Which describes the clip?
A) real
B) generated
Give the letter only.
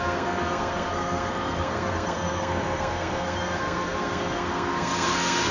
B